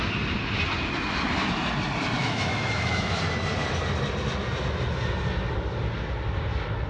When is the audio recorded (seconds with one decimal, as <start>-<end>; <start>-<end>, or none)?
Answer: 0.0-2.2; 3.2-6.9